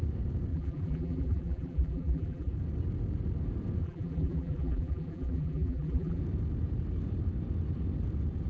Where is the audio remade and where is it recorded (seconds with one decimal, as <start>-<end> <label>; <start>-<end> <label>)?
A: 0.0-0.5 recorded; 0.5-2.5 remade; 2.5-3.8 recorded; 3.8-6.2 remade; 6.2-8.5 recorded